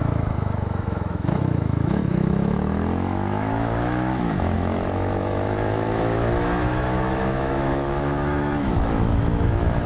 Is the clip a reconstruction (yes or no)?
yes